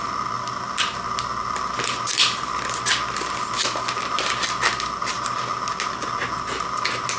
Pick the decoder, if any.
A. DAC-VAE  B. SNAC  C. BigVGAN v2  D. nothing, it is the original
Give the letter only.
D